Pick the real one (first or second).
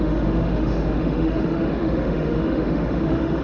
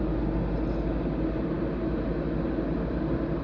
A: second